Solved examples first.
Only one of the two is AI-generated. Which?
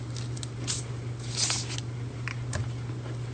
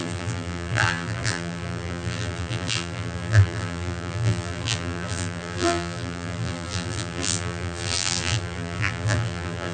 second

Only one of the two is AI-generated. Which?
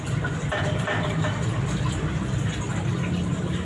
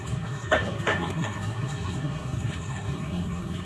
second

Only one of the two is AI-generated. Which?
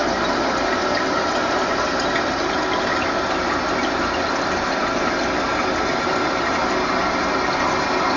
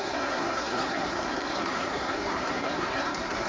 second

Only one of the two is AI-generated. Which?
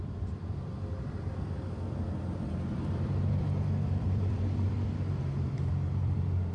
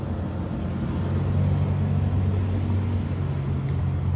first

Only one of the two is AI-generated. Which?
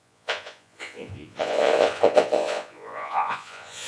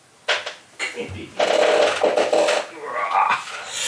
first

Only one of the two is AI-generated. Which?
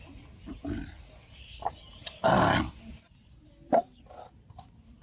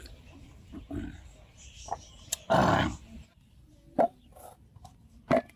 second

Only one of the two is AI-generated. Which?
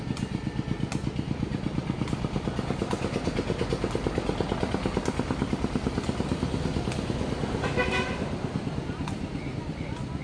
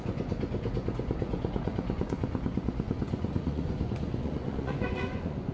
second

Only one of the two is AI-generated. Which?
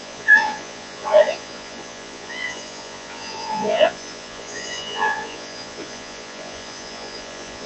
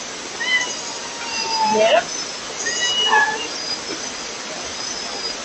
first